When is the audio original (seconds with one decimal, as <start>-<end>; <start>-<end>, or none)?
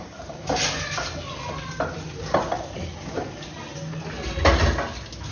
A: 0.0-5.3